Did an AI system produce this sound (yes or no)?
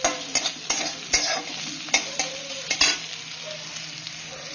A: no